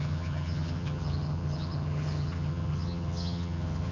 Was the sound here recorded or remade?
remade